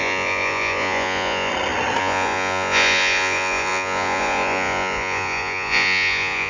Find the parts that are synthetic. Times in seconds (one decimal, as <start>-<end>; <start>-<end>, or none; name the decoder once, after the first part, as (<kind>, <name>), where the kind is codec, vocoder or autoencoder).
0.0-1.5 (vocoder, Vocos); 2.0-6.5